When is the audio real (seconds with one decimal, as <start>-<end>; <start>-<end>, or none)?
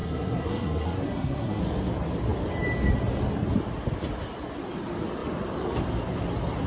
1.6-6.7